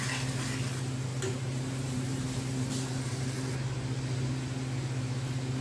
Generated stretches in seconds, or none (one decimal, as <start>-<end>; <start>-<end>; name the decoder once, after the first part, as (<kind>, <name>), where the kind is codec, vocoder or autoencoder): 1.1-2.7 (vocoder, BigVGAN v2)